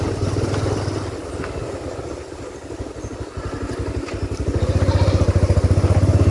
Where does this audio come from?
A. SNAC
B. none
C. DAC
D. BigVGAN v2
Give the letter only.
B